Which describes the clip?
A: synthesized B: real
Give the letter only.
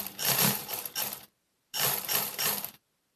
A